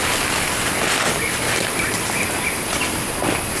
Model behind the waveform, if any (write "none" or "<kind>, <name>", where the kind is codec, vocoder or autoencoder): none